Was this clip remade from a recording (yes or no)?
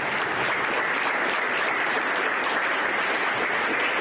no